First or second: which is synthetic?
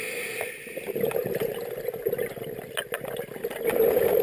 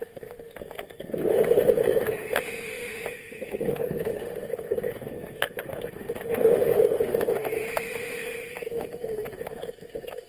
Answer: second